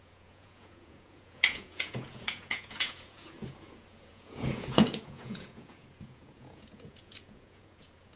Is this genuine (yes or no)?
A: no